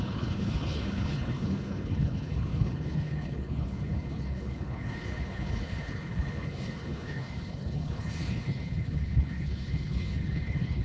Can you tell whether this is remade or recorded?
remade